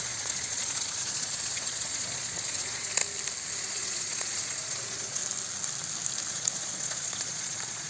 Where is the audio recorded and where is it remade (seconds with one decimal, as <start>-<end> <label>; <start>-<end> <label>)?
0.0-3.0 remade; 3.0-3.5 recorded; 3.5-5.2 remade; 5.2-6.3 recorded; 6.3-7.9 remade